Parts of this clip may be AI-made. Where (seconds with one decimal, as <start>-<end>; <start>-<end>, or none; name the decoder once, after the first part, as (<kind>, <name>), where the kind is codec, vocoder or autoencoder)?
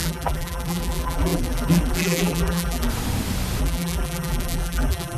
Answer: 0.0-2.9 (vocoder, BigVGAN v2); 3.6-5.2